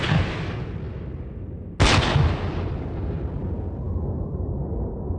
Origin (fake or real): real